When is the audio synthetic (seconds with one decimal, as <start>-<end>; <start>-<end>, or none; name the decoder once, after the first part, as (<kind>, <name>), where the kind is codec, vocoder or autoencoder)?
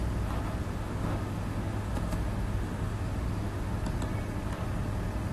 0.6-3.8 (autoencoder, DAC-VAE)